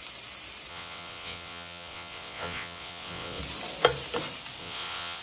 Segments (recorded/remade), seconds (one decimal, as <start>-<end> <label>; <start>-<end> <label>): 0.0-0.7 recorded; 0.7-3.4 remade; 3.4-4.6 recorded; 4.6-5.2 remade